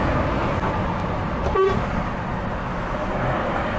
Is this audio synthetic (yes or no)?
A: no